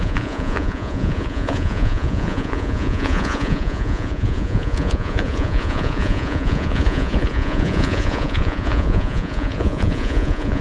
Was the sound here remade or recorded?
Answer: remade